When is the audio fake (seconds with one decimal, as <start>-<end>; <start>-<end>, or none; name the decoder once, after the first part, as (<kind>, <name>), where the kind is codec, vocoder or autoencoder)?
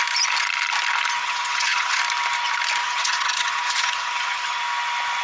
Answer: 1.2-2.0 (vocoder, HiFi-GAN); 2.8-4.6